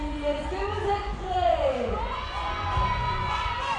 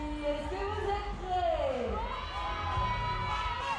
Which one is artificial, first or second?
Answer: first